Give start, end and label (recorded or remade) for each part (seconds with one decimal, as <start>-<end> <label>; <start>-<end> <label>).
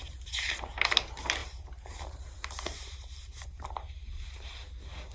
0.0-1.4 recorded; 1.4-4.5 remade; 4.5-5.1 recorded